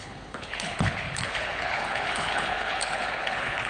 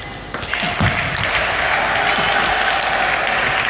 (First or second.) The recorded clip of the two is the second